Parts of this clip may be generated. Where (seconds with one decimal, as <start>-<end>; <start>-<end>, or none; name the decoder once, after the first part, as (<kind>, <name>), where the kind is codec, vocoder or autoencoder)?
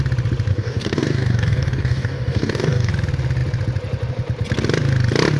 0.5-2.9 (codec, DAC)